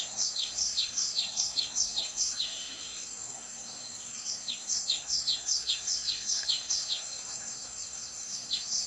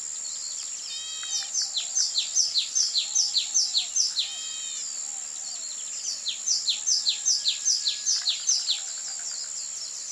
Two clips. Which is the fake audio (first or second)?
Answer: first